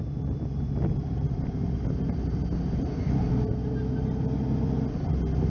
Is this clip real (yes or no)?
yes